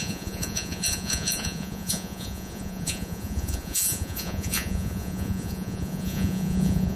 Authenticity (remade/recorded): remade